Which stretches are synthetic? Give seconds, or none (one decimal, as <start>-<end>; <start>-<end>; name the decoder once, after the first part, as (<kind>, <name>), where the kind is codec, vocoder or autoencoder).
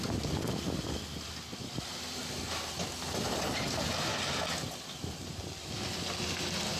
none